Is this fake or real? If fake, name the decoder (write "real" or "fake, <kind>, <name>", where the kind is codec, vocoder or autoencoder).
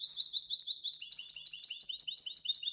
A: real